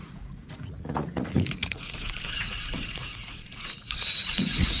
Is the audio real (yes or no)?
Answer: no